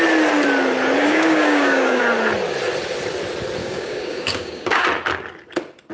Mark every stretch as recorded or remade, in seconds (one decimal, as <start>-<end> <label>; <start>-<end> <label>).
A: 0.0-1.0 recorded; 1.0-2.0 remade; 2.0-3.6 recorded; 3.6-4.8 remade; 4.8-5.9 recorded